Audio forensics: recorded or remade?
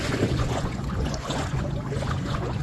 remade